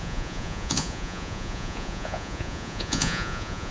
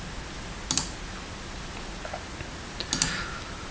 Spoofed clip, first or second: first